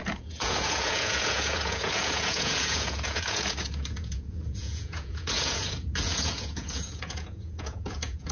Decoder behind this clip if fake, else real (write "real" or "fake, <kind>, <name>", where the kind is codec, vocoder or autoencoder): fake, vocoder, Vocos